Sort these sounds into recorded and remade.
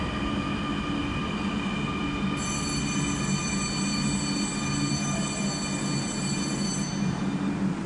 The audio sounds recorded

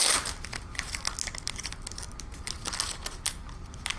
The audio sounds recorded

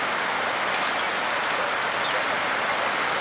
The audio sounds recorded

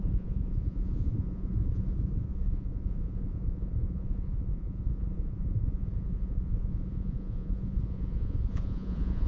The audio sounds remade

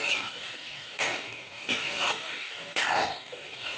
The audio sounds remade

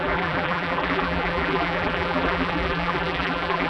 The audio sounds remade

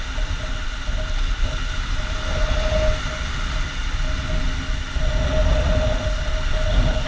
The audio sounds recorded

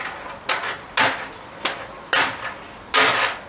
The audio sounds recorded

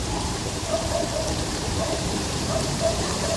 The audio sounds remade